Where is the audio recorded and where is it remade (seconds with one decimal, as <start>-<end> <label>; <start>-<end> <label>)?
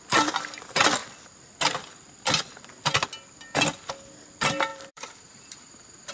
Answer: 0.0-4.7 recorded; 4.7-5.3 remade; 5.3-6.1 recorded